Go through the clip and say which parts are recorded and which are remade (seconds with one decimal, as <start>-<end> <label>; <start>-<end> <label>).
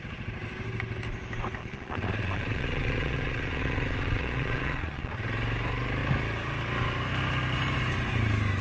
0.0-1.6 recorded; 1.6-5.1 remade; 5.1-8.6 recorded